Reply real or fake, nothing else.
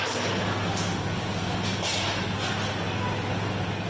real